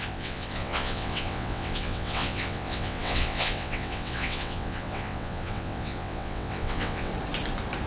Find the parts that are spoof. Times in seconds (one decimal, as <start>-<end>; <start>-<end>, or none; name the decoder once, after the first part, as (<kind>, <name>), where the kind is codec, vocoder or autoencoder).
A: 0.0-7.1 (vocoder, WaveNeXt)